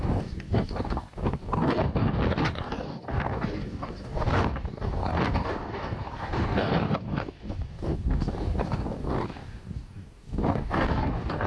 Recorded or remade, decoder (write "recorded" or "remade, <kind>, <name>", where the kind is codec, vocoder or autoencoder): remade, codec, DAC